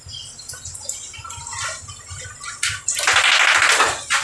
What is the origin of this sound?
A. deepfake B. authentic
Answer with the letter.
B